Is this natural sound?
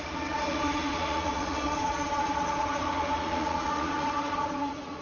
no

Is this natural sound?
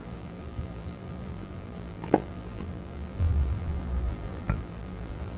no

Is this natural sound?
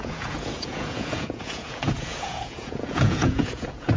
no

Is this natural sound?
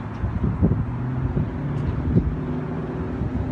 yes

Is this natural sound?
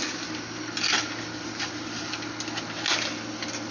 yes